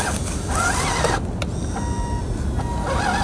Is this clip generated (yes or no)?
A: no